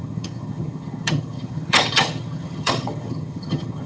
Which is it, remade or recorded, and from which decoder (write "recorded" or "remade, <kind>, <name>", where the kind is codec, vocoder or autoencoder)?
remade, vocoder, HiFi-GAN